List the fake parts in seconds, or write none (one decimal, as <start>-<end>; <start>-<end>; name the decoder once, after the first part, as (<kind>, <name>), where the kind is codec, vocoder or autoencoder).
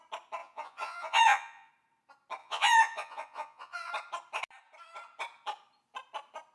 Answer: 0.4-1.7 (vocoder, Vocos); 2.4-3.9